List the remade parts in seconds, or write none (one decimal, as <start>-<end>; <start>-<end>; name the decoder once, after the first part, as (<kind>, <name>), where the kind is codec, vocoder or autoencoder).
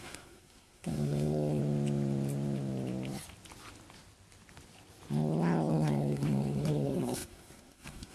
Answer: 0.0-1.6 (codec, SNAC); 5.7-8.1